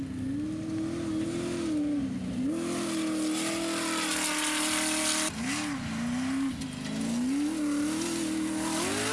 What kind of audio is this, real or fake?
real